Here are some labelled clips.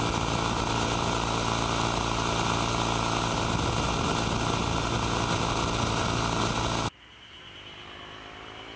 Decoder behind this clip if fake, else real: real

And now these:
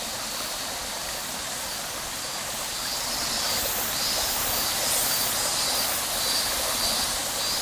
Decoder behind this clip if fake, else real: real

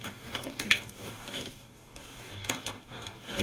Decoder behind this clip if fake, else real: fake, codec, DAC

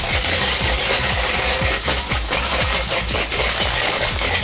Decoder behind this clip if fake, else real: fake, codec, DAC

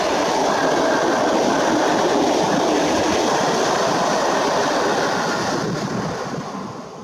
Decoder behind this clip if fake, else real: real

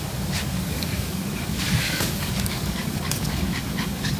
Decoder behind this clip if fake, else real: fake, codec, DAC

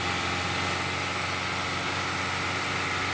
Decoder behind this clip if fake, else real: real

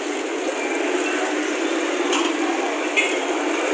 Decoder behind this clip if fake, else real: real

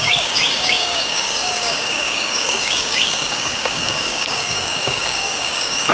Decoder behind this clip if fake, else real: fake, codec, DAC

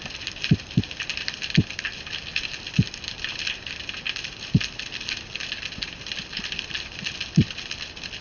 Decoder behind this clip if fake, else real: real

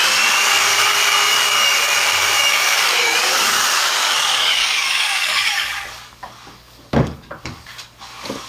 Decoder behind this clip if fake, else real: fake, codec, DAC